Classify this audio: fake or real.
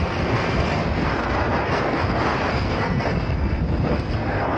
fake